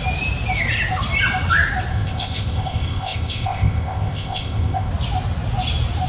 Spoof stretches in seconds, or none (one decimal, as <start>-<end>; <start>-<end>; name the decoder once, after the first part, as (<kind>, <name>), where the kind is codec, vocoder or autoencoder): 1.9-4.9 (codec, ZipCodec)